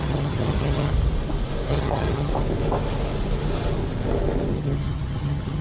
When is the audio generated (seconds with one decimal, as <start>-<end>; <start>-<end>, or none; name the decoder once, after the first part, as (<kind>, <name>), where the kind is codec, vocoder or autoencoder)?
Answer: 0.0-0.9 (vocoder, HiFi-GAN); 1.7-2.3; 4.5-5.6